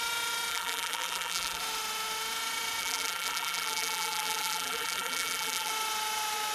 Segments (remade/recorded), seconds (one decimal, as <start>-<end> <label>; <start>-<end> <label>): 0.0-0.5 recorded; 0.5-1.6 remade; 1.6-2.8 recorded; 2.8-5.7 remade; 5.7-6.5 recorded

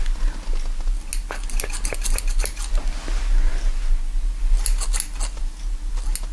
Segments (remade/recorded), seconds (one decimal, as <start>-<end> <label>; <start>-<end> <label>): 0.0-6.3 recorded

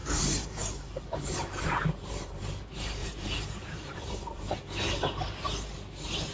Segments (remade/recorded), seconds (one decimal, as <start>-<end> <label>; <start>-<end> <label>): 0.0-2.4 remade; 2.4-3.0 recorded; 3.0-4.5 remade; 4.5-6.3 recorded

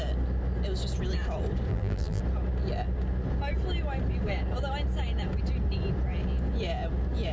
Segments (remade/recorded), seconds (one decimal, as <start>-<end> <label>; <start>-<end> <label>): 0.0-1.7 recorded; 1.7-2.2 remade; 2.2-7.3 recorded

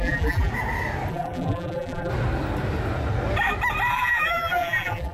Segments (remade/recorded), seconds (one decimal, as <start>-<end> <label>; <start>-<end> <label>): 0.0-0.5 remade; 0.5-1.1 recorded; 1.1-2.1 remade; 2.1-3.9 recorded; 3.9-5.1 remade